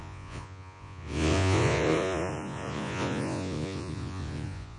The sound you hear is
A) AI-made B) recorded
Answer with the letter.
A